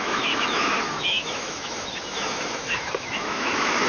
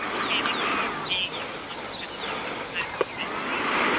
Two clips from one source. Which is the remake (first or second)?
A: first